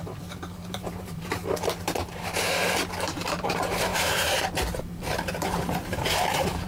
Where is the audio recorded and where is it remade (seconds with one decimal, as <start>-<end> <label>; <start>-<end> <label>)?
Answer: 0.0-6.7 remade